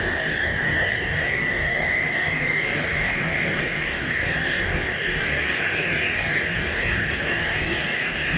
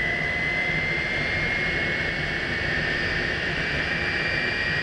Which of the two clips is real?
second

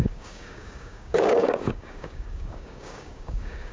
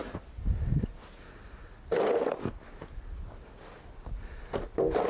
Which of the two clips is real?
second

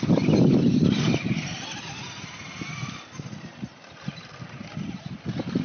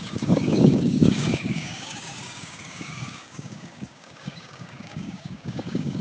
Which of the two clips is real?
first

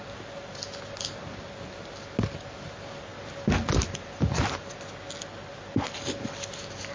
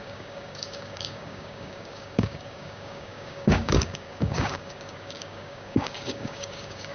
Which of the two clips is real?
first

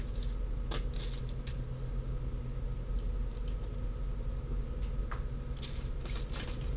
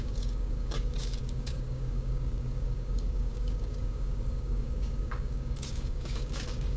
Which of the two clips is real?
first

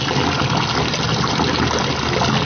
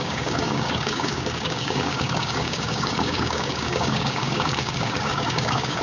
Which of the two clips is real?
first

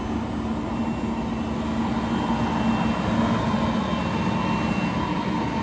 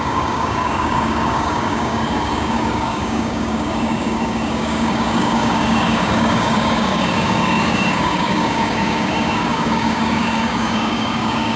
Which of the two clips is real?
first